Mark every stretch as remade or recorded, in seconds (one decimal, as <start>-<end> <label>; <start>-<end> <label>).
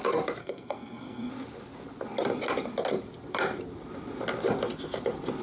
0.0-0.4 recorded; 0.4-1.3 remade; 1.3-5.4 recorded